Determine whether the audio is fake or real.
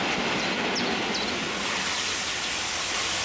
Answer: real